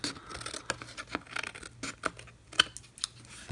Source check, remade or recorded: recorded